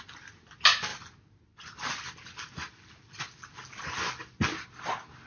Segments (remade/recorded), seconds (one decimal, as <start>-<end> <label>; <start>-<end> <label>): 0.0-5.3 recorded